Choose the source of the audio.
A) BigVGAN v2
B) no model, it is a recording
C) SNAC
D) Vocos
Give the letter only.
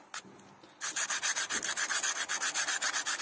B